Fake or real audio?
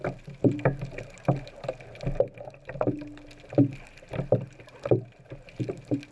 real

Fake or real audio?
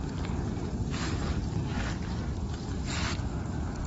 real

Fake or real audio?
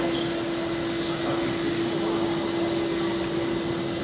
real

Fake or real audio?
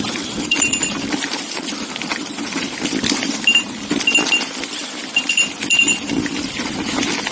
fake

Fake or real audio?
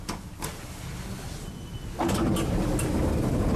real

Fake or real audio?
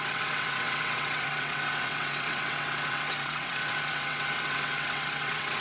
fake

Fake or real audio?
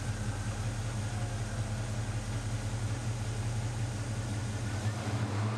real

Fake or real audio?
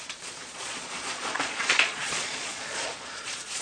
fake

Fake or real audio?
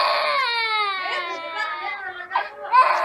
real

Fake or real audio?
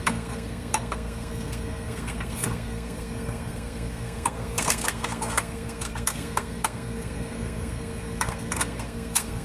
fake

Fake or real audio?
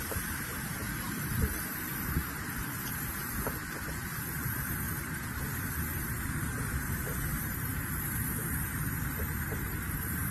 fake